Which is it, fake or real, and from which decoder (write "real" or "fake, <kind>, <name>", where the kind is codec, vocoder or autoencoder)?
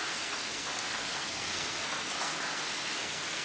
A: fake, codec, SNAC